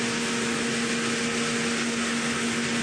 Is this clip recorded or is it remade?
recorded